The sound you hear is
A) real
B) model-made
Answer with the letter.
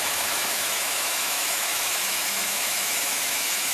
B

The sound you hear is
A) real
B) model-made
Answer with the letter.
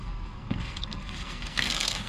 B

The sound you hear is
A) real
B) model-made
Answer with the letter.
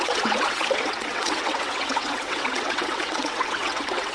B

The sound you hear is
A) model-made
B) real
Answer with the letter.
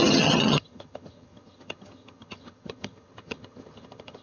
A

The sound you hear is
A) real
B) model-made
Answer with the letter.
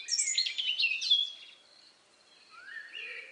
A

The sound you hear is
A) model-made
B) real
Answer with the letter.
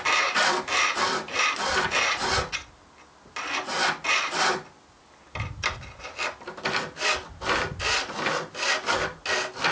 B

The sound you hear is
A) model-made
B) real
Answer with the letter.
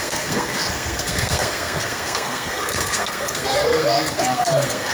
A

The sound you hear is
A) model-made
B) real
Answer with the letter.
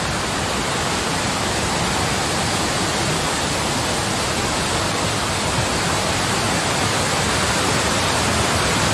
B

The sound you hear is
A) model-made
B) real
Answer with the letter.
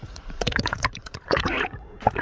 A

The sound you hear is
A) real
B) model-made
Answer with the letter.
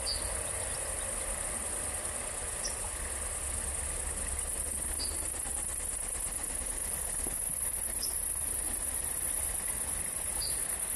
A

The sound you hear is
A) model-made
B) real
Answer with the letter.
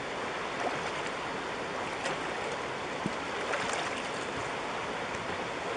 B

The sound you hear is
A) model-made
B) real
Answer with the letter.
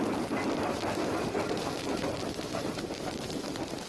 A